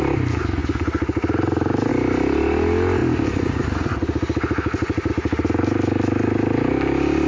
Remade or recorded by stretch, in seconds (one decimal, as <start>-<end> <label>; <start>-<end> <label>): 0.0-7.3 recorded